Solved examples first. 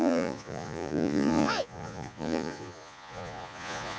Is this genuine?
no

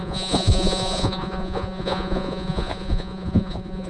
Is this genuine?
no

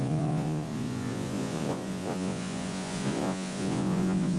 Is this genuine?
no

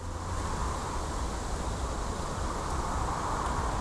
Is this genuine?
yes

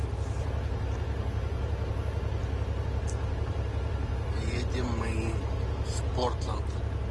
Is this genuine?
yes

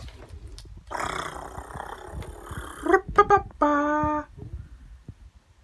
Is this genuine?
yes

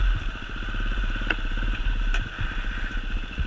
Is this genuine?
yes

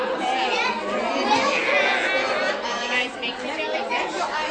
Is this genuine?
yes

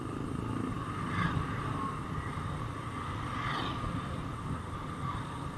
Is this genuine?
yes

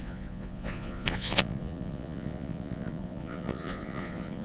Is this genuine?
no